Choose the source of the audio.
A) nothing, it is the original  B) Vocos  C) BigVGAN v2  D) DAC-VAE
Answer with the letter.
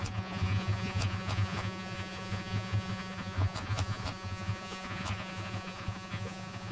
B